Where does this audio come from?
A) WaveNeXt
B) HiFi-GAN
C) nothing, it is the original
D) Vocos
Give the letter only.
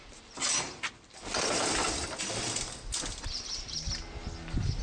C